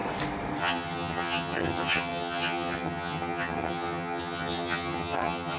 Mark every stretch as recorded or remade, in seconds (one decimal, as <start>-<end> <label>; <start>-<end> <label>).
0.0-0.6 recorded; 0.6-5.6 remade

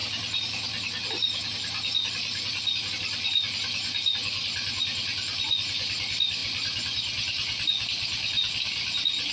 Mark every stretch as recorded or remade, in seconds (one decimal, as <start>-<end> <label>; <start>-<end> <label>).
0.0-9.3 recorded

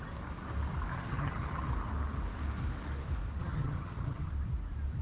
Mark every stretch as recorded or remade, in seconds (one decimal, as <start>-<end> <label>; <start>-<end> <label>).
0.0-0.9 recorded; 0.9-1.6 remade; 1.6-3.4 recorded; 3.4-4.3 remade; 4.3-5.0 recorded